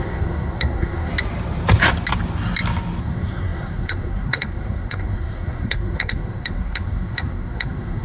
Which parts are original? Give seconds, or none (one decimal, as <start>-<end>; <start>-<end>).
1.1-3.0